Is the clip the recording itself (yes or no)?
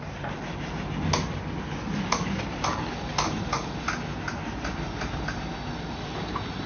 yes